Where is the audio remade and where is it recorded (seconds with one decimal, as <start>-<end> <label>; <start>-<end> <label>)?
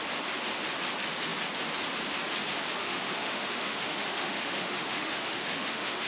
0.0-2.8 recorded; 2.8-6.1 remade